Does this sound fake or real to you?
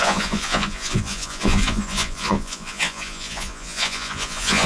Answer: fake